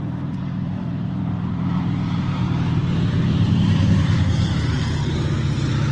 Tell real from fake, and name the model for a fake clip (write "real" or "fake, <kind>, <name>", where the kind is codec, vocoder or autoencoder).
fake, vocoder, BigVGAN v2